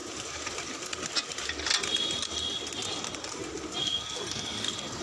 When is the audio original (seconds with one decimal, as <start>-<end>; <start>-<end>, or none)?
0.0-3.8